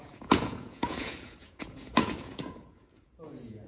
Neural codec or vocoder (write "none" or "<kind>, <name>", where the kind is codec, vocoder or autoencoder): vocoder, Vocos